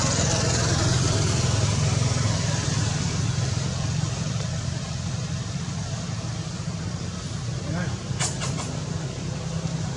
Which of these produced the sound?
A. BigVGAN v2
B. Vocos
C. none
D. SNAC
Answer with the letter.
C